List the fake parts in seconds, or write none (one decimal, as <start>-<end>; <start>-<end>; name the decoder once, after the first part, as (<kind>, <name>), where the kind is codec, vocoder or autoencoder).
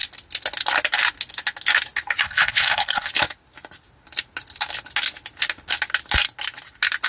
2.2-3.1 (codec, HILCodec)